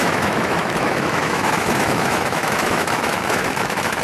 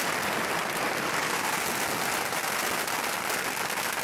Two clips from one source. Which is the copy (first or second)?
first